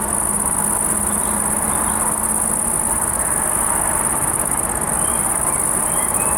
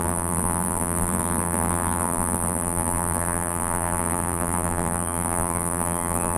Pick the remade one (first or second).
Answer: second